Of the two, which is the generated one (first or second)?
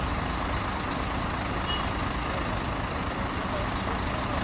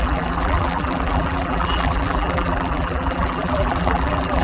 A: second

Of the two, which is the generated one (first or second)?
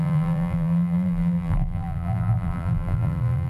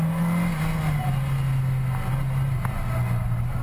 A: first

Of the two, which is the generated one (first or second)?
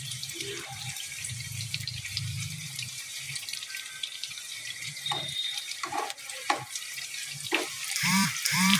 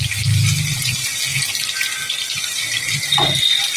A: first